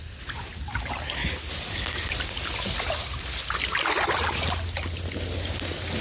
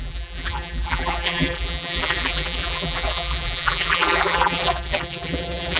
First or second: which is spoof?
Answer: second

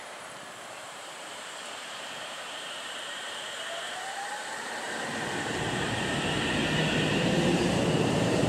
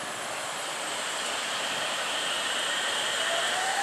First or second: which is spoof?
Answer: first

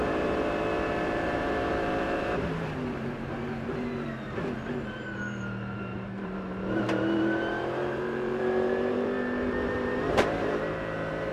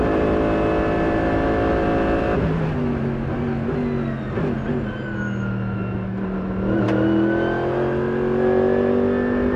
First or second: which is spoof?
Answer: first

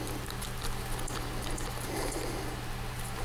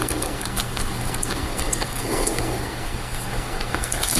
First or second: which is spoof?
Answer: second